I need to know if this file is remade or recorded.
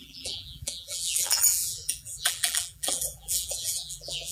remade